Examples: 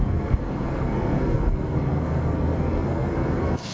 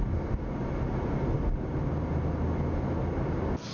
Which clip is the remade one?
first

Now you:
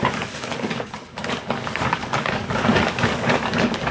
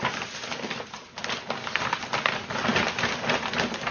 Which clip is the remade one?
first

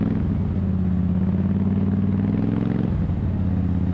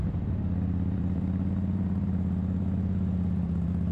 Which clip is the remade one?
second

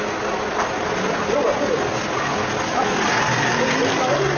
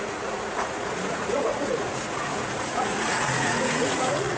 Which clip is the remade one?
second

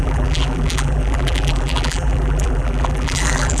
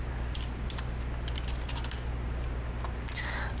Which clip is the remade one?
first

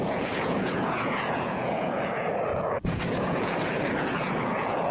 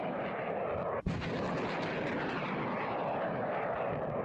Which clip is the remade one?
first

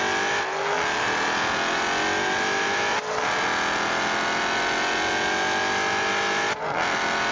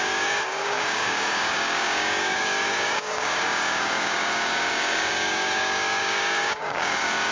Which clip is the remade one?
second